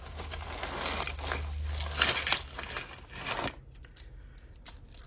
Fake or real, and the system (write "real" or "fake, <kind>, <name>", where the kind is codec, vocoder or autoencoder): real